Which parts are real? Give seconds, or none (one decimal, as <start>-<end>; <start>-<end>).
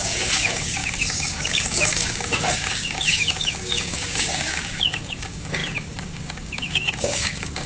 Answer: none